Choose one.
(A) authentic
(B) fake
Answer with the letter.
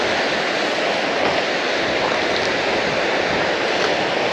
A